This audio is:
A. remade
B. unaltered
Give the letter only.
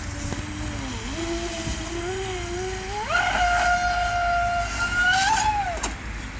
B